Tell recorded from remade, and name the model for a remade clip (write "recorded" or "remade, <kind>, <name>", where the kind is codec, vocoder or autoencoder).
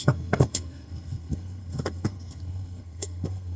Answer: remade, codec, SNAC